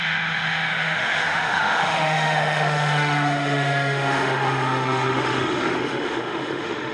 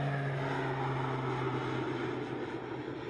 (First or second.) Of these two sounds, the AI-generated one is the first